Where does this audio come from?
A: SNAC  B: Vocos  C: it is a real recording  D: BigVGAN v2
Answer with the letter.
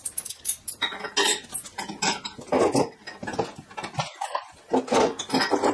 C